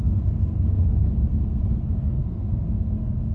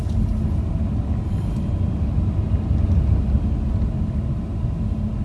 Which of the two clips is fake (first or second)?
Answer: first